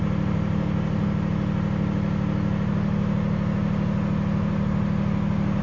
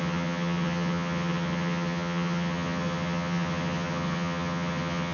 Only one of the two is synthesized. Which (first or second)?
second